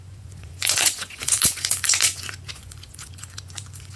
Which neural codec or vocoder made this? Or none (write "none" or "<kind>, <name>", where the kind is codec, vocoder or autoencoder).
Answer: vocoder, Vocos